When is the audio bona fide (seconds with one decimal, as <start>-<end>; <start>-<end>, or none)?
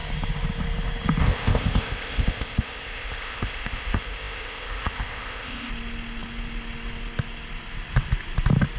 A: 0.0-1.2; 5.7-8.8